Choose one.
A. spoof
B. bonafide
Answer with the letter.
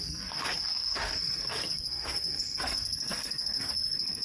A